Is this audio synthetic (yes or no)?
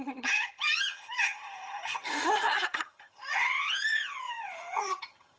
yes